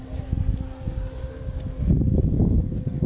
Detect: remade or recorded recorded